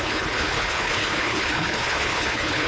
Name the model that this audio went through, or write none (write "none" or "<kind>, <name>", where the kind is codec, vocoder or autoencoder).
codec, HILCodec